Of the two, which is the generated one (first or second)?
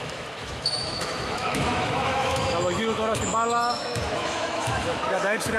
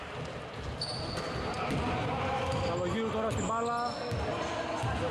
first